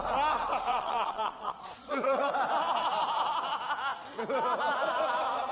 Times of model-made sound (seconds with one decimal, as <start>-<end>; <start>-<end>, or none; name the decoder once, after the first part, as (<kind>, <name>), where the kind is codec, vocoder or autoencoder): 0.7-2.3 (vocoder, Vocos)